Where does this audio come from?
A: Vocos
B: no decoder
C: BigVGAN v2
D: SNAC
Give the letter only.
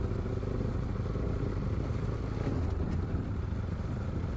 B